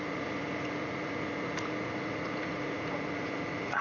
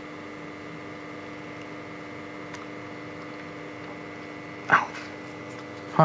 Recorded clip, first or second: second